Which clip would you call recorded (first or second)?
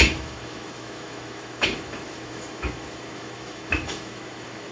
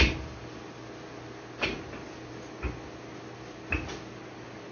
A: second